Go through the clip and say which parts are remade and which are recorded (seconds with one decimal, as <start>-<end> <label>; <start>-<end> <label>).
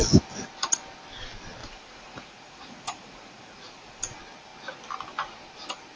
0.0-1.6 recorded; 1.6-4.0 remade; 4.0-6.0 recorded